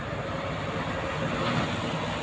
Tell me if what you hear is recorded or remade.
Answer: recorded